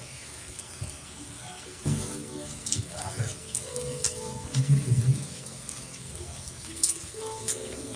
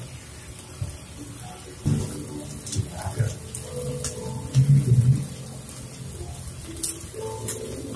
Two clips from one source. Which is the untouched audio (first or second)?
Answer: second